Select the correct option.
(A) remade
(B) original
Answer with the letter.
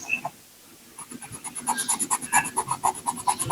B